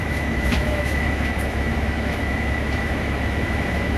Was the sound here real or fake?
fake